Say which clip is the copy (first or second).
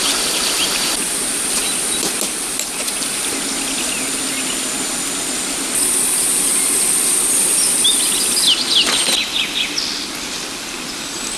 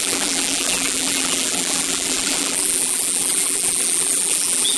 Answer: second